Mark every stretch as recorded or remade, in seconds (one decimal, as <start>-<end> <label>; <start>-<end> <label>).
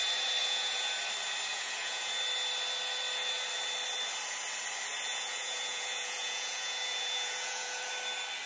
0.0-0.4 recorded; 0.4-0.9 remade; 0.9-1.5 recorded; 1.5-2.1 remade; 2.1-5.1 recorded; 5.1-7.9 remade; 7.9-8.5 recorded